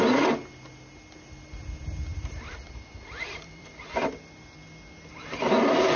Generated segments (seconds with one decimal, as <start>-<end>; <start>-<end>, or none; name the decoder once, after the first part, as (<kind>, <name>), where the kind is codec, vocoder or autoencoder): 2.1-3.8 (vocoder, BigVGAN v2); 5.1-6.0